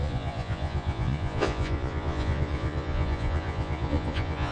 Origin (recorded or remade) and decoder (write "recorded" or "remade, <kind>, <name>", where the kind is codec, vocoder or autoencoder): remade, vocoder, Vocos